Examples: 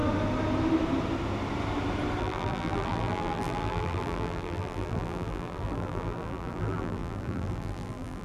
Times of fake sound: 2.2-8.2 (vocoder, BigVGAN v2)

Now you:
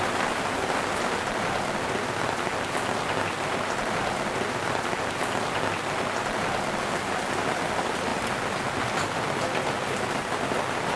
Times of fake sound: none

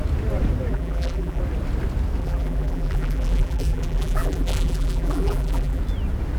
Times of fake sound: 0.7-1.4 (vocoder, BigVGAN v2); 2.2-5.8